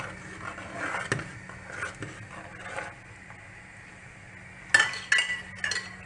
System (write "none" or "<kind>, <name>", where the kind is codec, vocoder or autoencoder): none